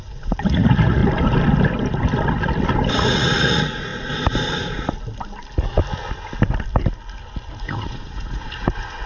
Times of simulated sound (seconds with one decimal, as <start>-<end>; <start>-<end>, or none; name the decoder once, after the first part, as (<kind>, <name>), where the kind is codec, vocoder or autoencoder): 0.0-1.0 (vocoder, Vocos); 2.9-3.9; 7.6-9.1